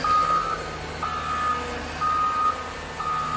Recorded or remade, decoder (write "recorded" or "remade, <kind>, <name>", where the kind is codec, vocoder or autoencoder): recorded